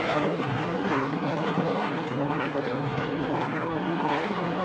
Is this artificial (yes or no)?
yes